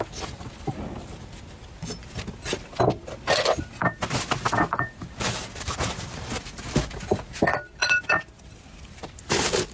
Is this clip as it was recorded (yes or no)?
yes